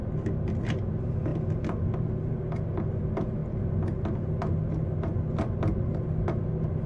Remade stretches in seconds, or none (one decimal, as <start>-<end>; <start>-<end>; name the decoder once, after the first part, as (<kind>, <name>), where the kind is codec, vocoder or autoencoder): none